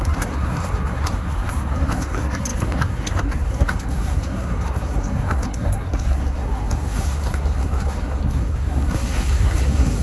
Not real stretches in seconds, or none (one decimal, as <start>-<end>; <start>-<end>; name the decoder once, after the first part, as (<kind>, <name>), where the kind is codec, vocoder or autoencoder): 0.0-10.0 (codec, SNAC)